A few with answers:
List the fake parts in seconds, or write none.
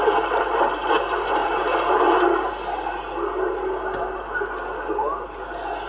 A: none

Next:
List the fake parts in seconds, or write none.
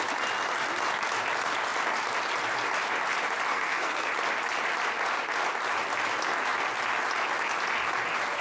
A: 3.5-4.1 (codec, SNAC)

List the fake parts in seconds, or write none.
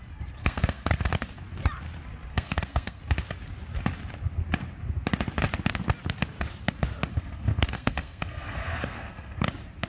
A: 0.4-1.1 (codec, SNAC); 2.3-3.0; 7.1-9.4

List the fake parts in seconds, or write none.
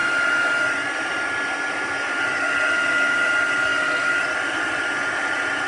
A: none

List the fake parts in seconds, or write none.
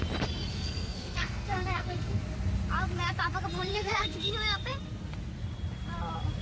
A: 0.5-2.2 (codec, SNAC); 3.7-4.3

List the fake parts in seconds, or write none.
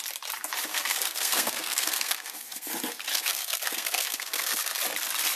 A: 0.7-2.7 (codec, SNAC); 3.1-4.7